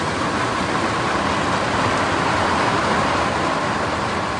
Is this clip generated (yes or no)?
no